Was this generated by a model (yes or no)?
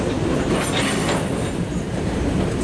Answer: no